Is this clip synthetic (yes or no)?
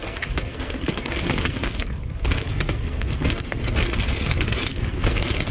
yes